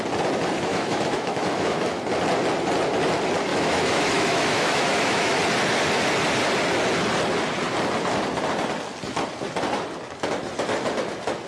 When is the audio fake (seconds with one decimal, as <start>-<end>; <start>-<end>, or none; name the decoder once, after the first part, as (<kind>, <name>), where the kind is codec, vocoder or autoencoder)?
0.7-2.0 (autoencoder, DAC-VAE); 3.5-5.4